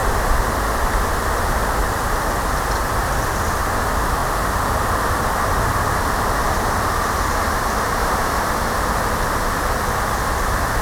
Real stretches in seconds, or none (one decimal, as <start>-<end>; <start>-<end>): 0.0-8.0; 8.5-10.8